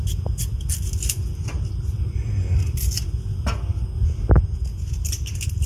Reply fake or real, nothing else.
real